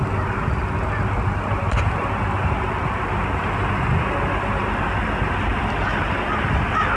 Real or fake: real